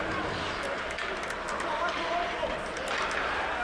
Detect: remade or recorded recorded